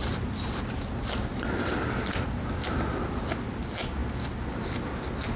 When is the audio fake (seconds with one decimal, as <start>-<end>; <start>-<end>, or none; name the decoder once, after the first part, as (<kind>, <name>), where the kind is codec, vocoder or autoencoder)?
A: none